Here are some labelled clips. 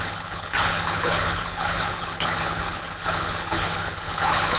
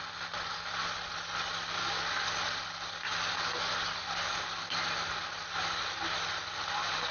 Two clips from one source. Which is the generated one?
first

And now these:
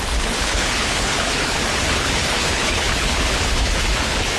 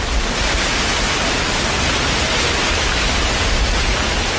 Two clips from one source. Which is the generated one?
first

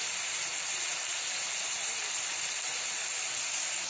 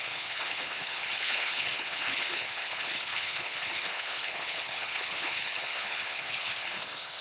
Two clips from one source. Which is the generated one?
second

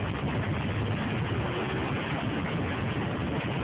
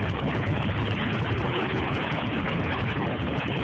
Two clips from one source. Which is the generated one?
second